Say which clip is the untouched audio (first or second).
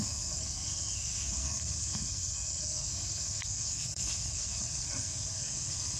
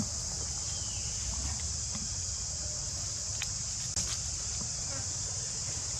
second